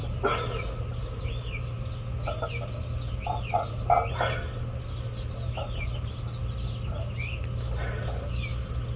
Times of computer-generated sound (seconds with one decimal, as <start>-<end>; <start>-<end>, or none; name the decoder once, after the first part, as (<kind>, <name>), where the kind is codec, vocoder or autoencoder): none